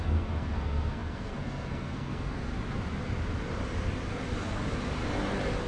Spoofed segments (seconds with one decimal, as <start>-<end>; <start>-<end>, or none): 0.0-2.5